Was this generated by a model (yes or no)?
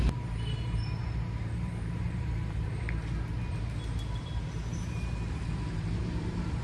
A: yes